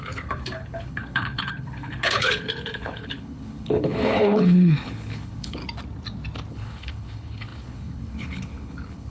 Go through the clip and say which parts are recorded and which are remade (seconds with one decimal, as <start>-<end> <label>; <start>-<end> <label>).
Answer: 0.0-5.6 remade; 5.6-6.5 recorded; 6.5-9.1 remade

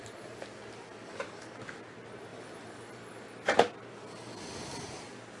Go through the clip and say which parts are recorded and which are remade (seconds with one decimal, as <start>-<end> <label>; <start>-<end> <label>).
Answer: 0.0-5.4 recorded

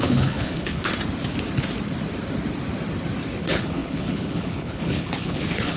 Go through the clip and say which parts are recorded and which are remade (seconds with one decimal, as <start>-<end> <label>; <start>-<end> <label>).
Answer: 0.0-0.9 remade; 0.9-3.4 recorded; 3.4-5.8 remade

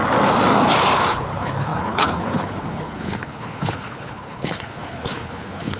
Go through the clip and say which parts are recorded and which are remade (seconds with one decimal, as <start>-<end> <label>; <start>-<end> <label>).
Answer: 0.0-1.1 recorded; 1.1-5.8 remade

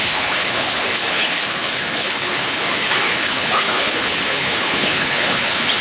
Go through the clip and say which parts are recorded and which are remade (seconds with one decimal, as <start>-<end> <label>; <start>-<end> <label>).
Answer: 0.0-5.8 remade

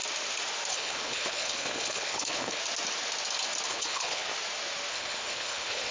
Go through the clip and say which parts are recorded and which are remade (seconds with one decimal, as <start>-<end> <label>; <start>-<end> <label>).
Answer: 0.0-0.7 recorded; 0.7-2.6 remade; 2.6-3.7 recorded; 3.7-4.3 remade; 4.3-4.9 recorded; 4.9-5.9 remade

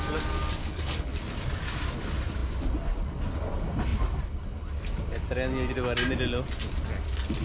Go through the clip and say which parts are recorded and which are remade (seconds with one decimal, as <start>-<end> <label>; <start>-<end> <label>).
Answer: 0.0-0.6 recorded; 0.6-1.1 remade; 1.1-7.4 recorded